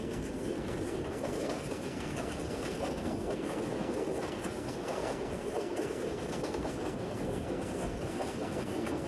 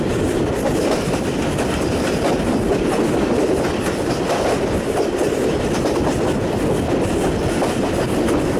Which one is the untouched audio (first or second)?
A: second